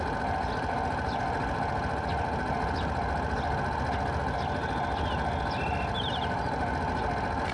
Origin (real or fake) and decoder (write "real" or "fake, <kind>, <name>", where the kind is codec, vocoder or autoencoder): real